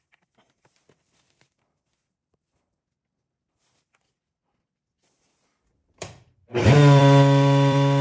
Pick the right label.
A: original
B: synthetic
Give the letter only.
B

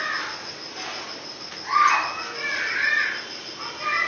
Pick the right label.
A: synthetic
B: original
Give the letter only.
B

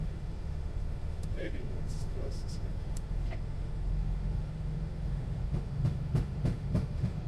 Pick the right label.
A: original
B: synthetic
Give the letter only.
B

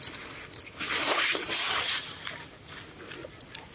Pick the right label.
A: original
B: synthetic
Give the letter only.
A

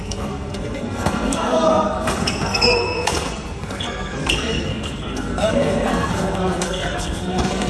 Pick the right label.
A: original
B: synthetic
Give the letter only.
B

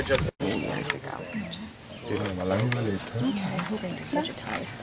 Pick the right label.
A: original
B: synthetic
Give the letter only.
A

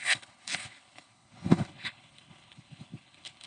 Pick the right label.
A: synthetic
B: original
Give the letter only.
A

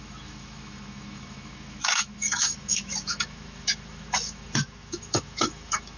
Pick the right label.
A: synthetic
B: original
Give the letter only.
A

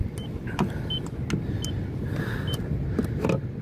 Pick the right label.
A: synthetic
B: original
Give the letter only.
B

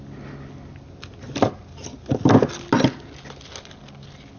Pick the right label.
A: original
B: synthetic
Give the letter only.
A